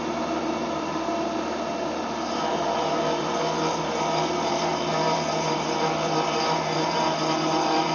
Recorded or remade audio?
remade